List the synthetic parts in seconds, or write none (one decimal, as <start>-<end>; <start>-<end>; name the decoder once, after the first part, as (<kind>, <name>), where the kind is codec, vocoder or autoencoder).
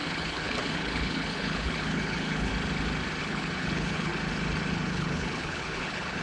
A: 0.0-2.5 (codec, HILCodec); 3.2-4.1; 4.7-6.2